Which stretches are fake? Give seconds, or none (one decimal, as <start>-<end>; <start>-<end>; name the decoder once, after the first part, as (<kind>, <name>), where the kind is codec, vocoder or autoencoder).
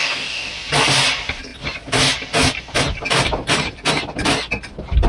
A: 0.0-0.5 (codec, DAC)